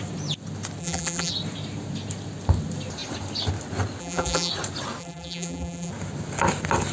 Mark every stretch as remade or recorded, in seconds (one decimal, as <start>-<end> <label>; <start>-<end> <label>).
0.0-0.8 recorded; 0.8-1.3 remade; 1.3-4.0 recorded; 4.0-4.5 remade; 4.5-5.0 recorded; 5.0-5.9 remade; 5.9-6.9 recorded